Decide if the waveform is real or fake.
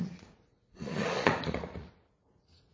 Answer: fake